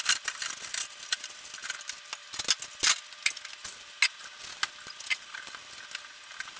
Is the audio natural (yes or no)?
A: yes